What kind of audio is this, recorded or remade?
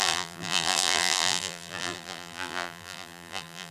remade